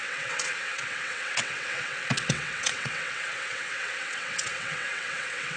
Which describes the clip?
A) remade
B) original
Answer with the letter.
A